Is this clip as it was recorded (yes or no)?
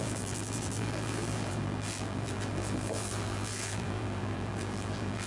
no